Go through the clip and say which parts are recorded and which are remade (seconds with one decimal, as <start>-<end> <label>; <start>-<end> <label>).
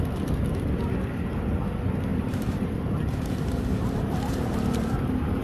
0.0-2.1 recorded; 2.1-5.4 remade